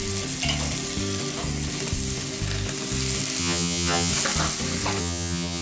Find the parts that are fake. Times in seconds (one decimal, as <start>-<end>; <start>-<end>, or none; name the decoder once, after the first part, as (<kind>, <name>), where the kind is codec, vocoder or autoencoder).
3.4-4.1 (vocoder, HiFi-GAN); 5.0-5.6